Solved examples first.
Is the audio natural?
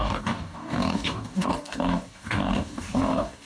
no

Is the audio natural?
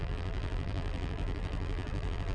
no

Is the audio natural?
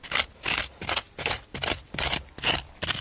yes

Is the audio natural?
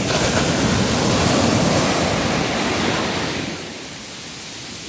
yes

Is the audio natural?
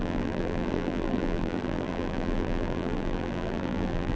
no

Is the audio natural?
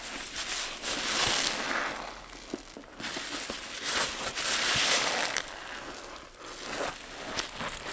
yes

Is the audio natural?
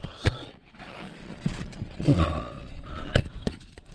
no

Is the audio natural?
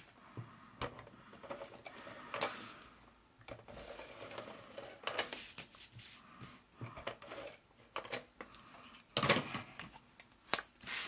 yes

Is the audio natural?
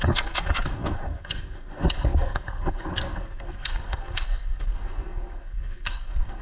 no